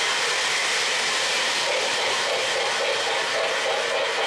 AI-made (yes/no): no